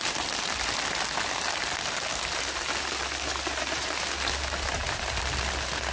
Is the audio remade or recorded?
recorded